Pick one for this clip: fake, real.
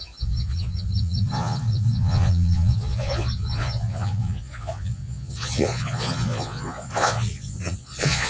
fake